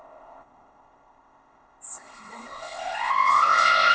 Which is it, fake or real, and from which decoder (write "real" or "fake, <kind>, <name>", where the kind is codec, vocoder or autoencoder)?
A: fake, codec, ZipCodec